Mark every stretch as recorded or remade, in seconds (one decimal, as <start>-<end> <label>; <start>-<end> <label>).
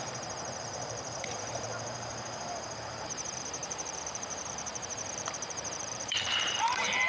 0.0-7.1 remade